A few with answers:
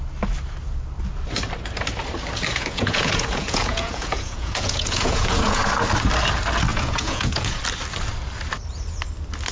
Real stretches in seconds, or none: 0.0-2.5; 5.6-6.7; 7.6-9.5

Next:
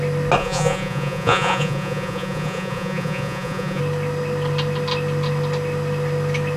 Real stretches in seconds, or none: 0.0-0.4; 3.8-6.6

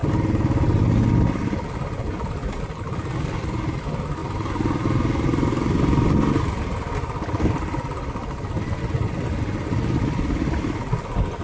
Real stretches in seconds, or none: 0.0-11.4

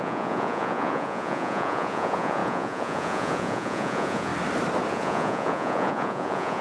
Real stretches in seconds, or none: 4.3-4.9

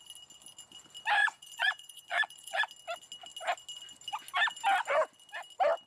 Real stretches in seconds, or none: 0.0-1.2; 2.7-5.9